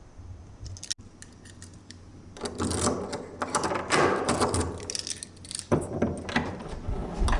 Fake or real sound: real